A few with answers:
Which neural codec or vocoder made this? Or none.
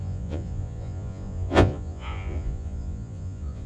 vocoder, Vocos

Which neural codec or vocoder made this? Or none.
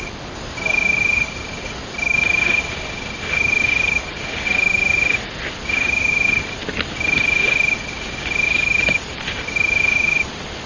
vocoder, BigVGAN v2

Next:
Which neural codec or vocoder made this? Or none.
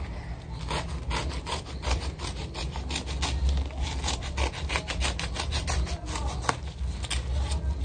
none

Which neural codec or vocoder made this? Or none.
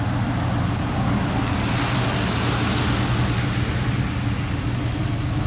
none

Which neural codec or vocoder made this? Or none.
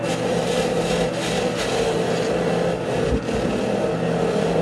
none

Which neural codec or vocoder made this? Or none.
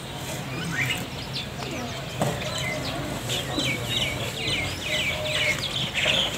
none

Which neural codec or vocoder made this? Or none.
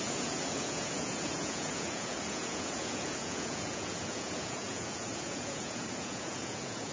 vocoder, Vocos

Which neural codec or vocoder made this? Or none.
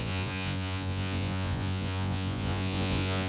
vocoder, Vocos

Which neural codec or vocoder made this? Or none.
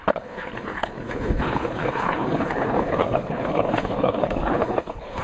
codec, HILCodec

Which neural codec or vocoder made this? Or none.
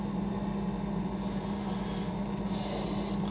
none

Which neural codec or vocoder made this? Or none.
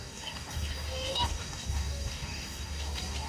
codec, DAC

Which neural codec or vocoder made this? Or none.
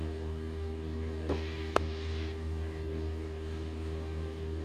codec, DAC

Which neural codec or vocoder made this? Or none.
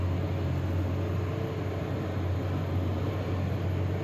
none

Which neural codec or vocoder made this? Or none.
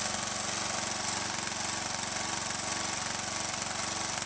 none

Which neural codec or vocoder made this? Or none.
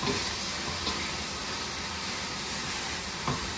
none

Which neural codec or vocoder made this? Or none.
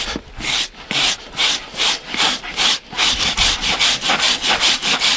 none